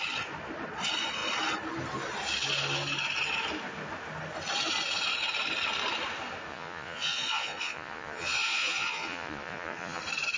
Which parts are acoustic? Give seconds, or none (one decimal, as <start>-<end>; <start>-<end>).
0.0-6.5; 10.0-10.4